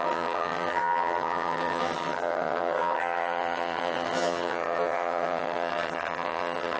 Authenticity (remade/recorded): remade